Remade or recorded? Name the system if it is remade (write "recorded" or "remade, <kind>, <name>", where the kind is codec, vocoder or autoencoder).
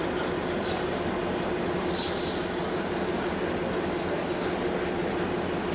recorded